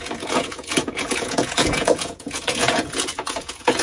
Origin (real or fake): fake